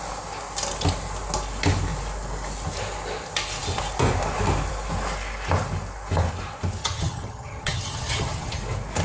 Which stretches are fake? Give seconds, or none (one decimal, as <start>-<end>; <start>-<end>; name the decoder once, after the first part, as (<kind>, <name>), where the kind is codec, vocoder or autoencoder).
6.8-8.6 (vocoder, HiFi-GAN)